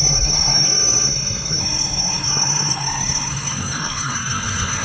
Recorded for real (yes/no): no